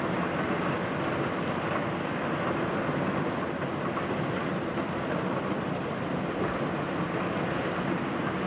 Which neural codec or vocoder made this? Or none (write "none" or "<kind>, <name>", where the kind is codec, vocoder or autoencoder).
none